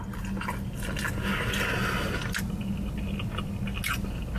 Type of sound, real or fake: real